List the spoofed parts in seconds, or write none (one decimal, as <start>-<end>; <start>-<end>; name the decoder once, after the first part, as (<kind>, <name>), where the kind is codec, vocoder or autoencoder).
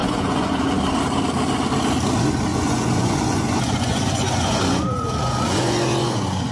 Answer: 0.0-0.8 (vocoder, Vocos); 2.5-6.5